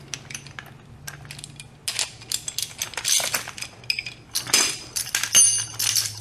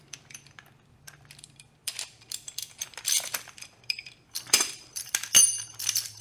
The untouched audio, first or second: first